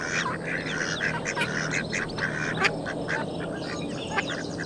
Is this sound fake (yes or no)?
no